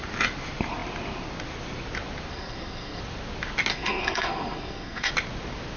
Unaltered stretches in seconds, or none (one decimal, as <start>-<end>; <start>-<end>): 0.0-2.3; 3.0-3.7; 5.1-5.8